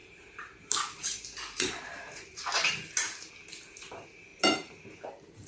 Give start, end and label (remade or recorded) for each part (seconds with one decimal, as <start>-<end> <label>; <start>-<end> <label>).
0.0-3.3 remade; 3.3-4.3 recorded; 4.3-5.5 remade